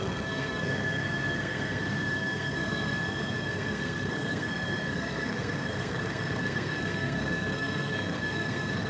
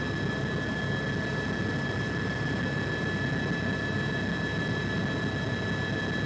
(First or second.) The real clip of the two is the second